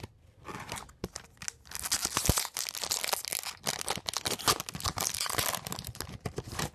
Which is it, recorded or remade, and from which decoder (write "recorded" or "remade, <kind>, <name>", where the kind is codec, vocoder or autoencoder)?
recorded